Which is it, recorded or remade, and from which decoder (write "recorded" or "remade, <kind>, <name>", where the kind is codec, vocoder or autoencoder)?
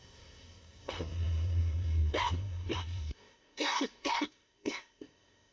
remade, codec, SNAC